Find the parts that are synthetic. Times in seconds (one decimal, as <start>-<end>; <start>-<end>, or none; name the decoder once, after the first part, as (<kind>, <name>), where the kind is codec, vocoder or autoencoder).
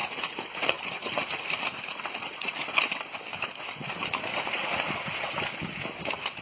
0.0-2.6 (vocoder, Vocos); 4.3-5.3